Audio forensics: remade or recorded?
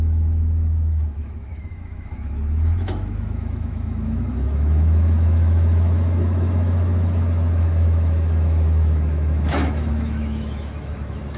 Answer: remade